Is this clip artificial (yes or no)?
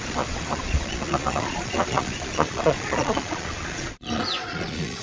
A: yes